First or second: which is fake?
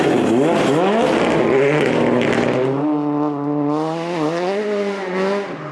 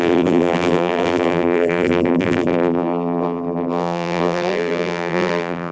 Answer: second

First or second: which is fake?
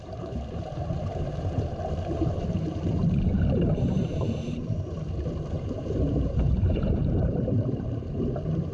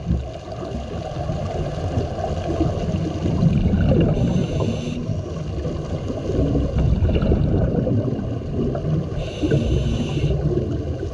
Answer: first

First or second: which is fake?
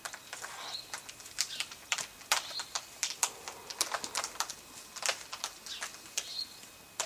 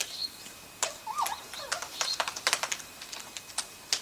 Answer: second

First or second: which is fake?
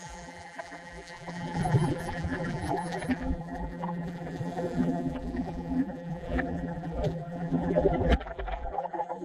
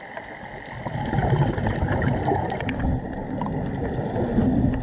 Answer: first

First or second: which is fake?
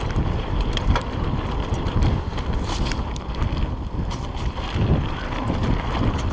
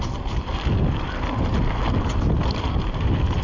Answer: first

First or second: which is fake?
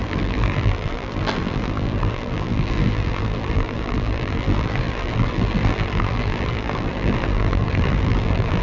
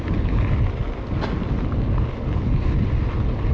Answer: first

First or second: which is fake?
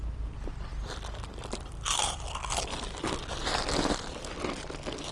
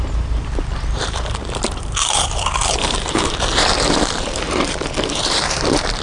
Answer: second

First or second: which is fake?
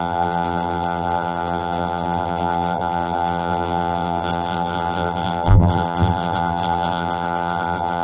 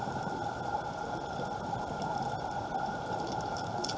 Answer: first